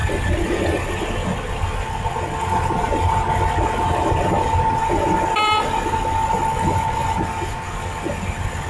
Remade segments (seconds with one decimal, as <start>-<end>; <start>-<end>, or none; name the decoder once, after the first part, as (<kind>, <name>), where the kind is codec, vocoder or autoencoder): none